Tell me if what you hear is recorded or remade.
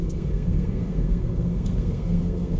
remade